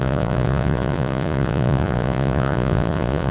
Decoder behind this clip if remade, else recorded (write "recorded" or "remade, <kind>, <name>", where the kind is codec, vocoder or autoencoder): remade, vocoder, Vocos